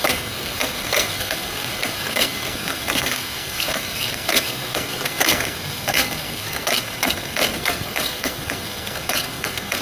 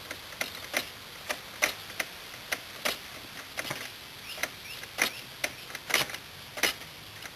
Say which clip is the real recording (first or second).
second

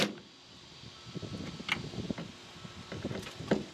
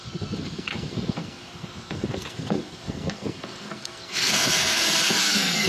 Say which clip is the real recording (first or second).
first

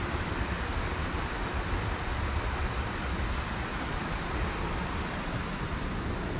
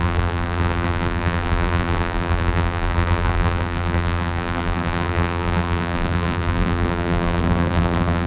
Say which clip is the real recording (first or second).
first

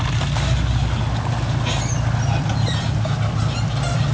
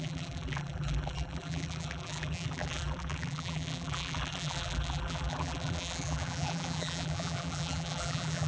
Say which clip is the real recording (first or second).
first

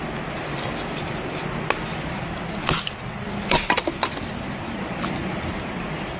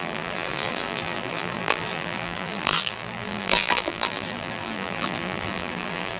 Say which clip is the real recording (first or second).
first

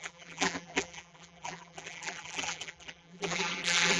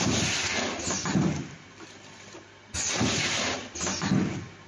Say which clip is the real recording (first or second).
second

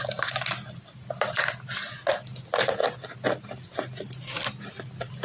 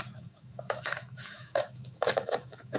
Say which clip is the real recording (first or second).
first